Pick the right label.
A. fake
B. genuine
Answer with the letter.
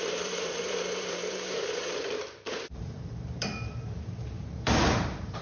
A